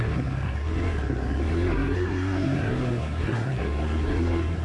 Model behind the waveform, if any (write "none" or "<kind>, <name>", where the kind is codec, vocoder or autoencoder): codec, SNAC